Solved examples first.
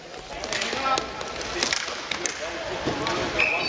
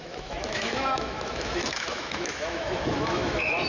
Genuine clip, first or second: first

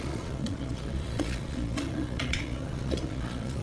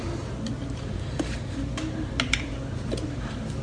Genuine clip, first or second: second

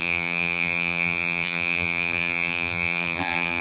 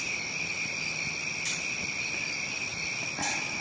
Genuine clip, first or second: second